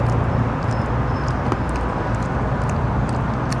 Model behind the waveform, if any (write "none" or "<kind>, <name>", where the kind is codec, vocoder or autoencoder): none